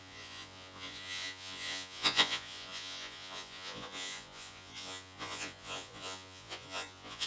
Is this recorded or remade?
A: remade